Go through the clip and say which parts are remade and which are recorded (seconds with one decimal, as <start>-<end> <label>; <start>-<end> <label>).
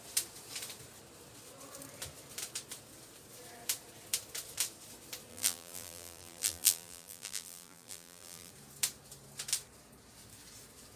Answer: 0.0-5.3 recorded; 5.3-8.5 remade; 8.5-11.0 recorded